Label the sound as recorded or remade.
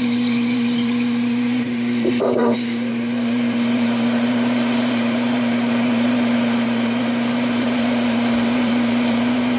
remade